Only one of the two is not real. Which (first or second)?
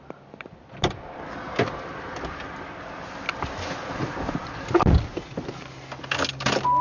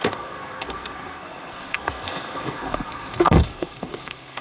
second